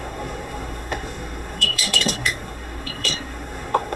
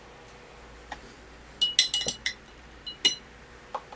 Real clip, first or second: second